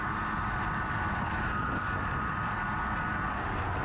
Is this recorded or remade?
recorded